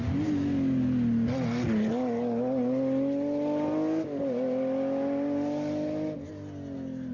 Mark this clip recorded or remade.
recorded